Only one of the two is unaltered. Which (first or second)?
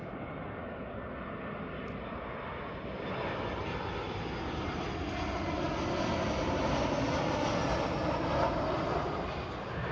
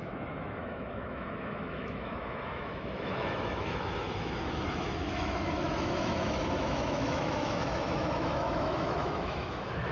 first